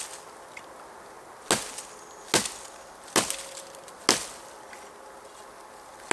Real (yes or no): yes